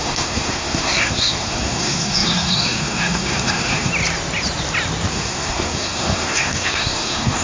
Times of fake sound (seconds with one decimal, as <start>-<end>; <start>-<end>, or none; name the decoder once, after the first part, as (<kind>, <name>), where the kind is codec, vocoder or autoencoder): 0.0-3.9 (codec, SNAC); 5.1-7.4